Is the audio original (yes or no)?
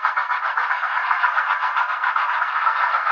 no